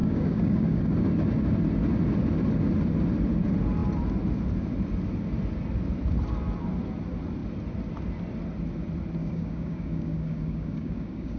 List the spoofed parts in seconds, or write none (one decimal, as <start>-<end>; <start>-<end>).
0.0-0.8; 9.2-11.4